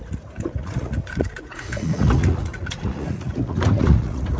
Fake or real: fake